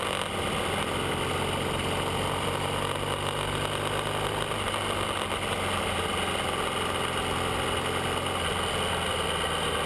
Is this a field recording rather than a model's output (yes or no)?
yes